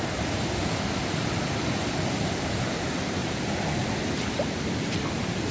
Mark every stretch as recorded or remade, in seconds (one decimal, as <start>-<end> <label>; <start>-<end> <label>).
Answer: 0.0-1.0 recorded; 1.0-1.7 remade; 1.7-3.2 recorded; 3.2-4.4 remade; 4.4-5.5 recorded